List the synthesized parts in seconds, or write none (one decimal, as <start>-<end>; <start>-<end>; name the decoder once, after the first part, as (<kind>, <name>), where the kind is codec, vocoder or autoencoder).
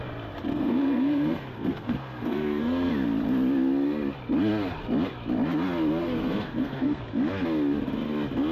0.5-2.9 (codec, SNAC); 6.0-7.0